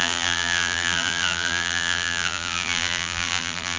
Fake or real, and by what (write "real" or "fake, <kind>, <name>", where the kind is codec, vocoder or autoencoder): fake, vocoder, BigVGAN v2